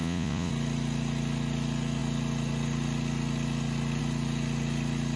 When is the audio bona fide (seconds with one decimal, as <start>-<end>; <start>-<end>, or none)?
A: 0.5-5.2